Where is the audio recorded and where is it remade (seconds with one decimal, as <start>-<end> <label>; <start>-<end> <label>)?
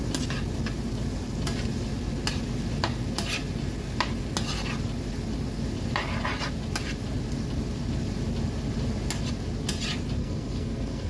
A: 0.0-10.2 recorded; 10.2-11.1 remade